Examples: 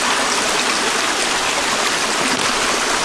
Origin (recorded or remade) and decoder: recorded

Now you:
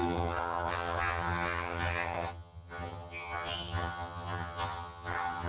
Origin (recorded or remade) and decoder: remade, vocoder, HiFi-GAN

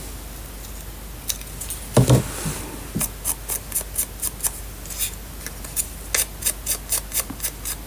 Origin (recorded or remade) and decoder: recorded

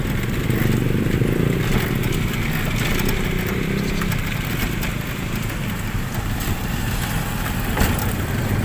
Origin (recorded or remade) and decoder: recorded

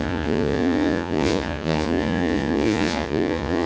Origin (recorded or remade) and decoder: remade, vocoder, Vocos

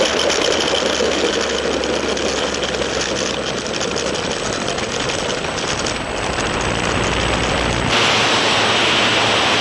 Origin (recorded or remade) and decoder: recorded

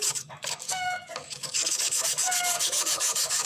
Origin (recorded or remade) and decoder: remade, codec, DAC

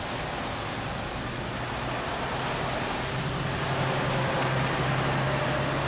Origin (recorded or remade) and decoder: recorded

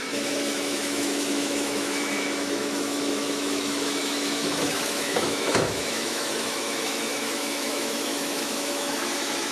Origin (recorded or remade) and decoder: remade, autoencoder, DAC-VAE